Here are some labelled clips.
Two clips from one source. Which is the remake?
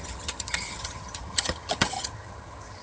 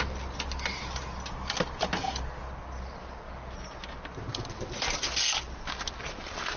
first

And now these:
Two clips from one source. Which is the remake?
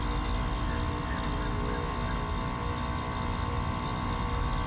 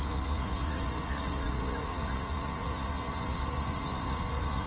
second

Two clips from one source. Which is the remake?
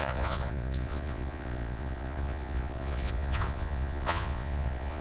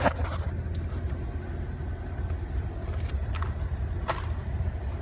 first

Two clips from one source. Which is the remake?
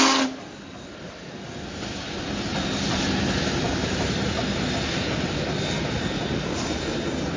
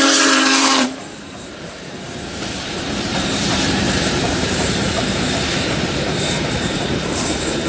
second